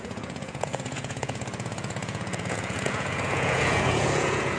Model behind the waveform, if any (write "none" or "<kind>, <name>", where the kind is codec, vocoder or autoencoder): vocoder, Vocos